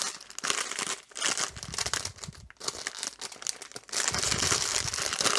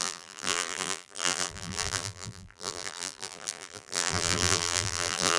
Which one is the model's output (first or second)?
second